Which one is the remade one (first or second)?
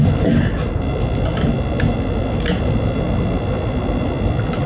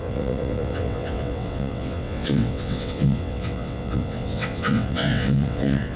second